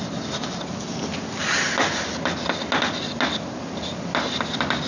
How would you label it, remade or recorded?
recorded